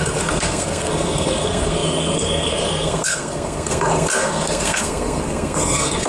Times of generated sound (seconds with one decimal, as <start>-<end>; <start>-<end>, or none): 0.0-6.1